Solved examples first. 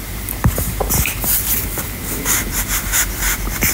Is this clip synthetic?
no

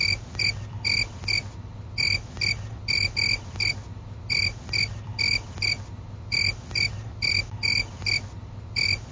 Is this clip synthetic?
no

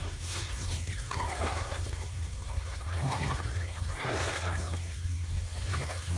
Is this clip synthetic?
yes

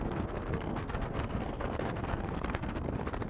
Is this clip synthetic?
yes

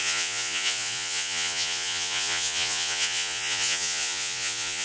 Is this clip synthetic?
yes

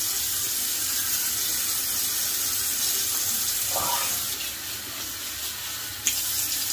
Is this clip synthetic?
no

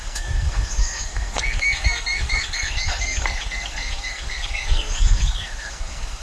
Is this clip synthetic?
yes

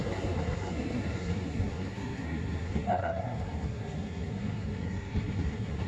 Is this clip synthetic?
yes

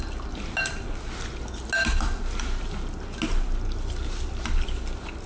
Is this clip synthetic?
no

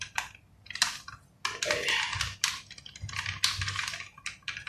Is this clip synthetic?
no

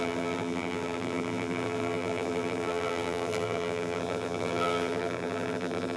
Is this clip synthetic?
yes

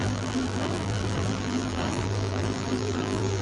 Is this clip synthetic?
yes